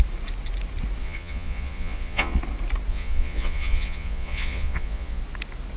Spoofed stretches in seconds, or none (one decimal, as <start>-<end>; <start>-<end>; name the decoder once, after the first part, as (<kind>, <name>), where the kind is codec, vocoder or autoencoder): 1.0-2.4 (vocoder, Vocos); 2.9-5.2